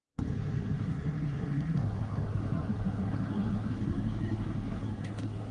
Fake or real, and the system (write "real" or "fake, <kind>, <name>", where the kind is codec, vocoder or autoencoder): fake, codec, SNAC